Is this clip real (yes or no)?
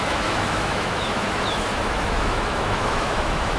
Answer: no